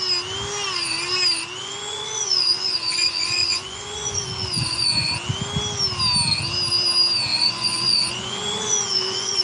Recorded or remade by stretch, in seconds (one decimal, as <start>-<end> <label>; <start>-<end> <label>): 0.0-1.6 recorded; 1.6-5.1 remade; 5.1-7.3 recorded; 7.3-9.4 remade